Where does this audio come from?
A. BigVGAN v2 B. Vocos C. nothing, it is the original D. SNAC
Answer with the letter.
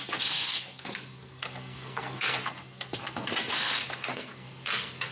D